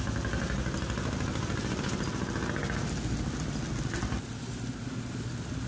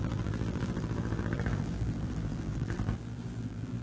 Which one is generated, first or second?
second